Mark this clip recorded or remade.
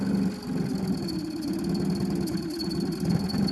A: recorded